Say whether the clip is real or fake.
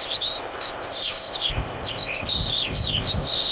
fake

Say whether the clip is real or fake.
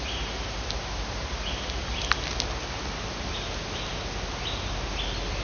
real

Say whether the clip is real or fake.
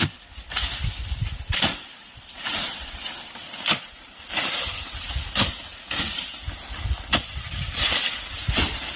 real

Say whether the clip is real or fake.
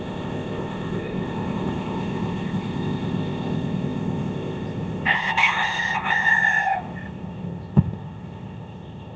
fake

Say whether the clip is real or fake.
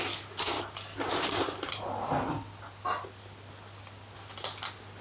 real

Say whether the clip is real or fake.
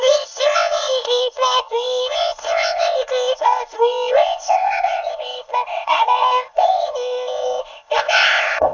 fake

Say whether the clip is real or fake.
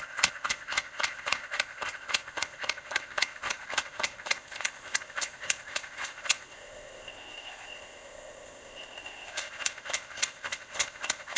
fake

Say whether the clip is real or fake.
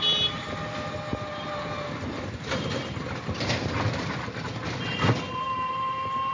real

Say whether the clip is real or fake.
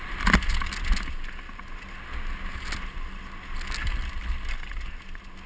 real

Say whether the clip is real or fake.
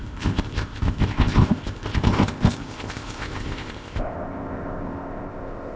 fake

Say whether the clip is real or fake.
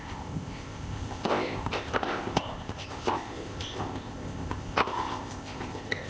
fake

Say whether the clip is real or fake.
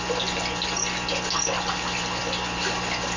real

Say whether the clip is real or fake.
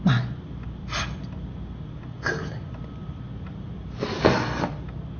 real